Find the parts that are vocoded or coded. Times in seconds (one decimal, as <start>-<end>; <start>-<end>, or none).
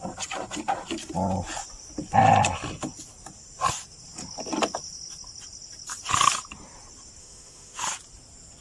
7.2-7.8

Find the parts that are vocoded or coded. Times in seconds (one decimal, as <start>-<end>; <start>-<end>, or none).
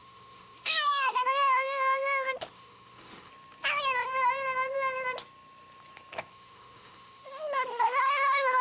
0.0-3.3; 6.3-8.6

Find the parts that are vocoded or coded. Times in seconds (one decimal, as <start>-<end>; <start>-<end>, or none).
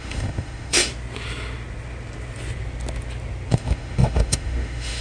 0.0-0.9; 3.5-5.0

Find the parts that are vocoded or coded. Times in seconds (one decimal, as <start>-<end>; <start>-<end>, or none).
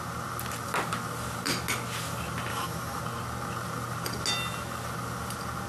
2.5-3.0